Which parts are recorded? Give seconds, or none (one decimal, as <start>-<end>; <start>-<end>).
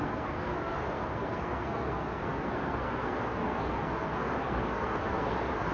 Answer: none